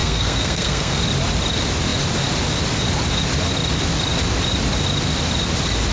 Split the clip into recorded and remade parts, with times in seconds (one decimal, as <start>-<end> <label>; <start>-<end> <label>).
0.0-1.0 remade; 1.0-5.9 recorded